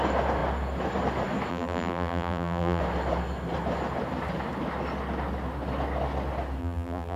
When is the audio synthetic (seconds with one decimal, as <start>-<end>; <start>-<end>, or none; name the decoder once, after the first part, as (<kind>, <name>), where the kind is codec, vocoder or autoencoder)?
1.5-2.8 (vocoder, BigVGAN v2); 6.6-7.2